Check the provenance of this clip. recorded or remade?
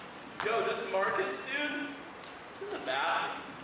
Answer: recorded